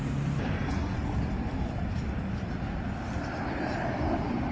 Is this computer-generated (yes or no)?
no